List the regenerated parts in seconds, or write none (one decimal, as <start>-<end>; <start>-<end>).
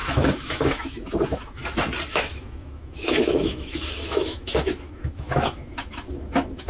0.0-1.6; 2.1-6.7